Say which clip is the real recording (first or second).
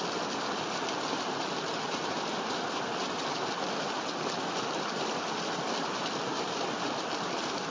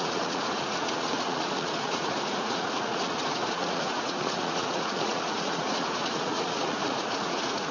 first